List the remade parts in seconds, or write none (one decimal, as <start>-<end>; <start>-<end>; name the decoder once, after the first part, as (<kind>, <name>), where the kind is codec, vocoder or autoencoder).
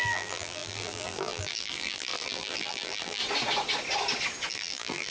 0.0-3.2 (vocoder, BigVGAN v2); 4.5-5.1